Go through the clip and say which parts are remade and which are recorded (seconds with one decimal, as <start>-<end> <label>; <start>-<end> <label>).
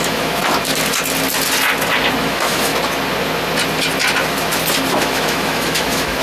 0.0-0.4 remade; 0.4-2.2 recorded; 2.2-2.7 remade; 2.7-4.9 recorded; 4.9-6.2 remade